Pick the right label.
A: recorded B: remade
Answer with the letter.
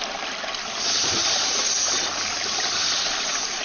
A